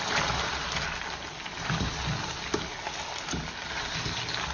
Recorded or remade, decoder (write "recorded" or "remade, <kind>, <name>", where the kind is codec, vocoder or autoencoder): recorded